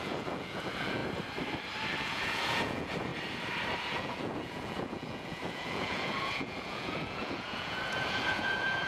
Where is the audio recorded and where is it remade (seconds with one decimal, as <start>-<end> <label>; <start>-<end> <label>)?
0.0-1.0 remade; 1.0-2.0 recorded; 2.0-3.1 remade; 3.1-3.8 recorded; 3.8-8.9 remade